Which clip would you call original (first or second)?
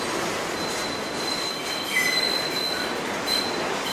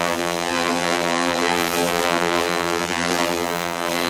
first